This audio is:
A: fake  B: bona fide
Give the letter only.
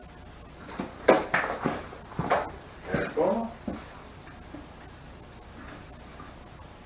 B